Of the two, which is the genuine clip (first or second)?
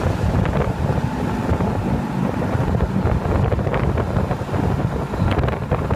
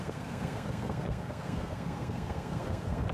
first